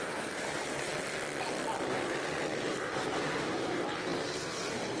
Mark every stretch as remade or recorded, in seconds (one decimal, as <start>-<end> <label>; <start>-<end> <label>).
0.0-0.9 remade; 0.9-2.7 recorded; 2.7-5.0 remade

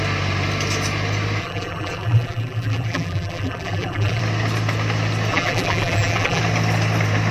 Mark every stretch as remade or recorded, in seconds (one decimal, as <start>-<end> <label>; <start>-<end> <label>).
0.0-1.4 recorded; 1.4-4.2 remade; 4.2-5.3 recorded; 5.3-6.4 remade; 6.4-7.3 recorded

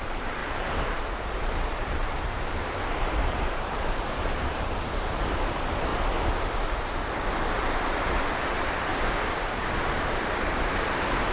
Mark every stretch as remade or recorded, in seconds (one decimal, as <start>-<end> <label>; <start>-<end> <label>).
0.0-0.4 remade; 0.4-1.4 recorded; 1.4-5.9 remade; 5.9-7.5 recorded; 7.5-8.9 remade; 8.9-9.6 recorded; 9.6-11.3 remade

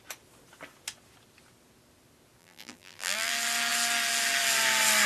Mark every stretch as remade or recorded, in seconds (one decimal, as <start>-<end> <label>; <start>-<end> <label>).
0.0-2.4 recorded; 2.4-3.3 remade; 3.3-5.1 recorded

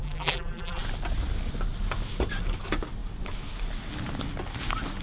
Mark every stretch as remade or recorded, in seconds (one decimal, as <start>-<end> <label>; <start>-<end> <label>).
0.0-0.8 remade; 0.8-5.0 recorded

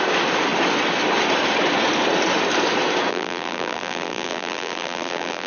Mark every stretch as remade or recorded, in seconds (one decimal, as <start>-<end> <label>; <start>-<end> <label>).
0.0-3.1 recorded; 3.1-5.5 remade

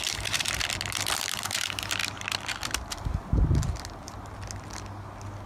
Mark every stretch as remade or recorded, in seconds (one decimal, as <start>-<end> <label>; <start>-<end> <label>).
0.0-5.5 recorded

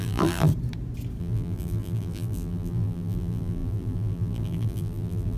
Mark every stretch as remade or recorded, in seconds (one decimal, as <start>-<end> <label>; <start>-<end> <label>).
0.0-0.5 remade; 0.5-1.2 recorded; 1.2-5.4 remade